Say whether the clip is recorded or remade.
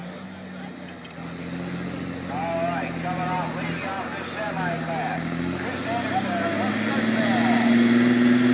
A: recorded